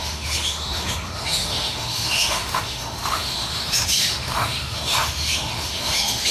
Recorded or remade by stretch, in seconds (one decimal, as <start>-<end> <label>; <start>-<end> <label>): 0.0-6.3 remade